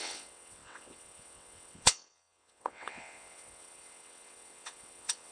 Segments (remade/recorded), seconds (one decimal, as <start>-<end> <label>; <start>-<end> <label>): 0.0-5.3 remade